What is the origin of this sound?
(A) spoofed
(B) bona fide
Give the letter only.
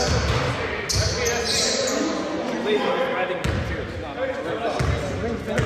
B